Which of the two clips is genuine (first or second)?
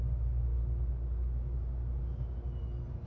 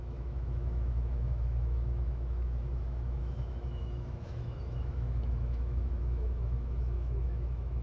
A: first